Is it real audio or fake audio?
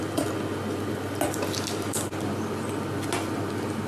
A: real